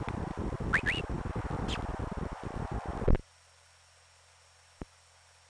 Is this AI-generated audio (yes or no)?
no